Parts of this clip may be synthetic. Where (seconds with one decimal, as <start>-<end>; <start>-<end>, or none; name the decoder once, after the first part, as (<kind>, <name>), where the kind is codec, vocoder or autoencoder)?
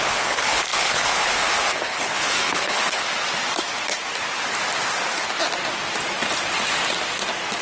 0.0-3.0 (codec, HILCodec)